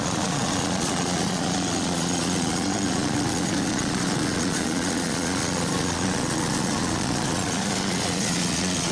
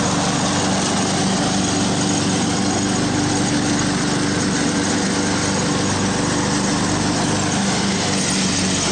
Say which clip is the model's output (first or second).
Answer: first